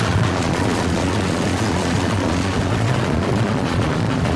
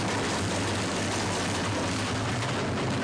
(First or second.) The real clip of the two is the second